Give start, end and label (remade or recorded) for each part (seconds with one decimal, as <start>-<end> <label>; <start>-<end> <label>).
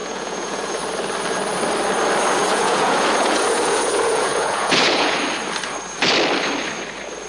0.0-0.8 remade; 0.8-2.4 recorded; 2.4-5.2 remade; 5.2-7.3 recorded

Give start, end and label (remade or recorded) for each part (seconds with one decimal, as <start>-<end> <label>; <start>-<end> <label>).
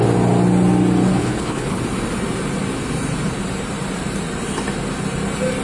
0.0-1.2 recorded; 1.2-1.8 remade; 1.8-5.6 recorded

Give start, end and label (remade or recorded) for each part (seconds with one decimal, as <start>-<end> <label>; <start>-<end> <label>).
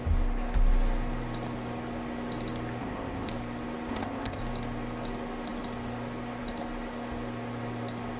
0.0-2.8 recorded; 2.8-3.3 remade; 3.3-3.9 recorded; 3.9-4.4 remade; 4.4-8.2 recorded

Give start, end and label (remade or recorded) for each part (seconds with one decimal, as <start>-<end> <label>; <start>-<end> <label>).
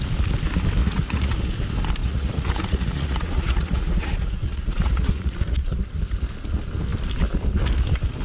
0.0-0.8 recorded; 0.8-1.5 remade; 1.5-2.0 recorded; 2.0-5.8 remade; 5.8-8.2 recorded